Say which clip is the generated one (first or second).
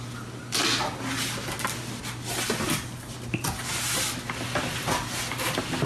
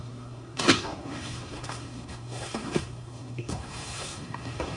second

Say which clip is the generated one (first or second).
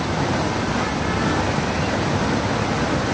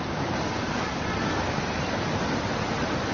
second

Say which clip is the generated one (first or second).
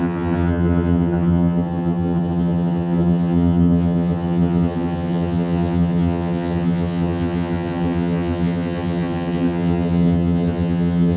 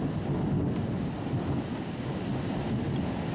first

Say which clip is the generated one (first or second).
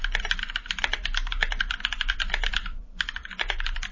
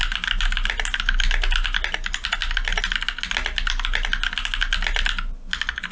first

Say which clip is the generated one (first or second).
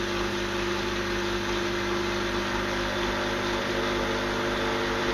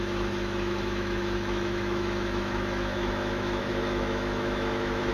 second